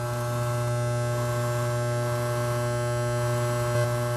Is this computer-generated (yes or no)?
no